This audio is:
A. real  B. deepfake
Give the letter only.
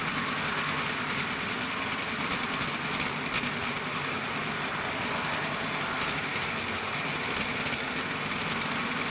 A